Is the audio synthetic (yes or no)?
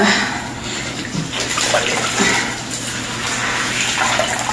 no